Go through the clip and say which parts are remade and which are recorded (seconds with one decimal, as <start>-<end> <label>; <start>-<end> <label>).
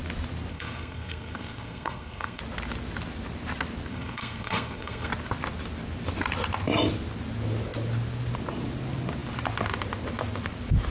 0.0-0.5 recorded; 0.5-2.4 remade; 2.4-3.9 recorded; 3.9-5.1 remade; 5.1-10.9 recorded